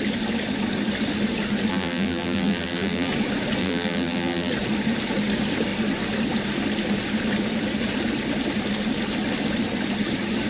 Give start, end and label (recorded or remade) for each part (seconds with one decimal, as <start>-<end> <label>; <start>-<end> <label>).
0.0-1.7 recorded; 1.7-3.1 remade; 3.1-3.6 recorded; 3.6-4.5 remade; 4.5-10.5 recorded